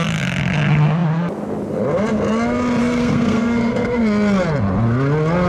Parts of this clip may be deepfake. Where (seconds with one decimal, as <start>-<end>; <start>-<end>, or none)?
2.8-4.0